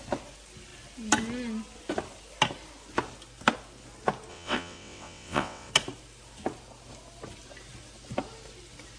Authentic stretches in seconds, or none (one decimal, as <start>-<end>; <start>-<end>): 0.0-4.3; 5.7-9.0